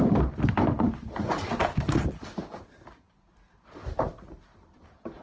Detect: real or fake fake